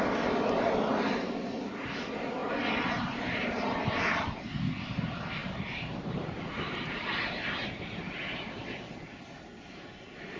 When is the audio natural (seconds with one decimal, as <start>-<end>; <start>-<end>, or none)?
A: 0.0-5.4; 6.6-7.6; 8.2-10.4